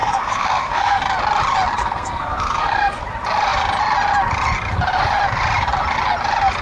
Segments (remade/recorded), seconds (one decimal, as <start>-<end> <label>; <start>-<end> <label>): 0.0-1.0 remade; 1.0-1.8 recorded; 1.8-3.0 remade; 3.0-6.6 recorded